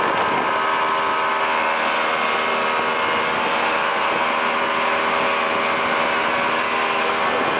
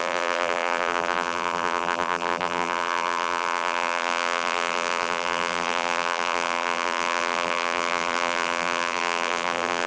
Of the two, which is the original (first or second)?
first